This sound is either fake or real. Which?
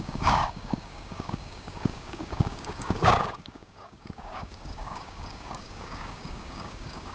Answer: fake